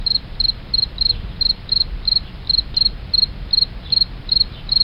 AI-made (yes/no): yes